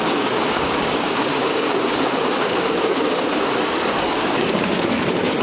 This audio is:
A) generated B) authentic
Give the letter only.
A